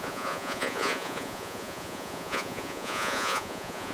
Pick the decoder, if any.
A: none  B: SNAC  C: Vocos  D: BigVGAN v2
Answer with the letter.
C